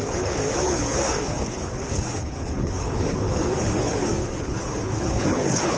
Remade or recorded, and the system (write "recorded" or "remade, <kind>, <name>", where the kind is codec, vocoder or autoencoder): remade, codec, HILCodec